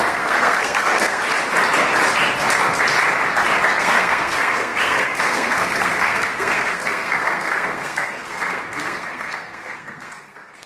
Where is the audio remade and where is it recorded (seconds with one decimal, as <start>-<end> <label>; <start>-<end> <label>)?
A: 0.0-1.2 remade; 1.2-3.8 recorded; 3.8-10.7 remade